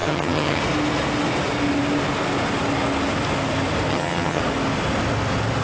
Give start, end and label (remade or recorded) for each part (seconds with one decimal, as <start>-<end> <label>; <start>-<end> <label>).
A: 0.0-0.6 remade; 0.6-3.9 recorded; 3.9-4.4 remade; 4.4-5.6 recorded